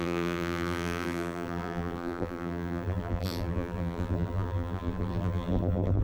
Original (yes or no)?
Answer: no